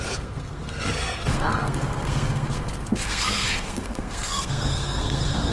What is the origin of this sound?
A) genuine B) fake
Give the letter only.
B